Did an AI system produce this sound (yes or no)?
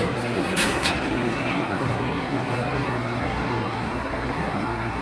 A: yes